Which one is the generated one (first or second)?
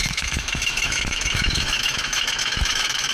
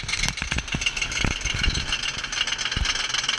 first